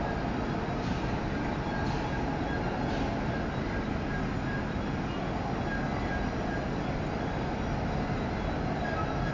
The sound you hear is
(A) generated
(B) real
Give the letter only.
B